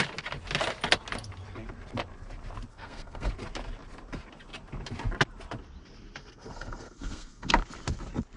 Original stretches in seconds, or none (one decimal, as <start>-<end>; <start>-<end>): 0.0-2.7; 3.3-6.2; 7.5-8.4